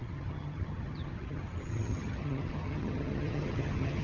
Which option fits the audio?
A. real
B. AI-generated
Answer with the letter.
B